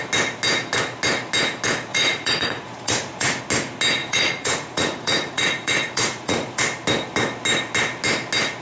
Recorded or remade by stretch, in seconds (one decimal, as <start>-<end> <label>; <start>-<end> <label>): 0.0-1.9 recorded; 1.9-3.4 remade; 3.4-4.0 recorded; 4.0-6.6 remade; 6.6-8.6 recorded

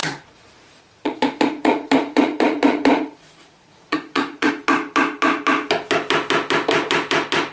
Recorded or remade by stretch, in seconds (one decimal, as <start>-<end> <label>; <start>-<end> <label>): 0.0-4.5 remade; 4.5-7.5 recorded

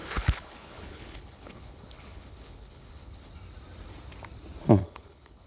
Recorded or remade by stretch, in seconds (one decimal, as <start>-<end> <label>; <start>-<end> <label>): 0.0-3.3 remade; 3.3-4.8 recorded; 4.8-5.5 remade

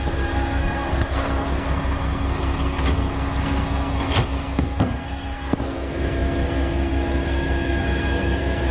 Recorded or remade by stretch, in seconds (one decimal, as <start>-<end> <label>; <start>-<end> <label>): 0.0-8.7 remade

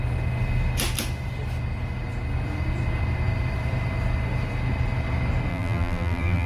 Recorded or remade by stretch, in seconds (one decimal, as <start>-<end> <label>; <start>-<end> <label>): 0.0-5.5 recorded; 5.5-6.5 remade

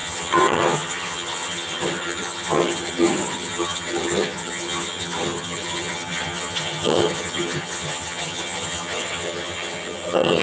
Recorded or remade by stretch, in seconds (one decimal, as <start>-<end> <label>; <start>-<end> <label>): 0.0-10.4 remade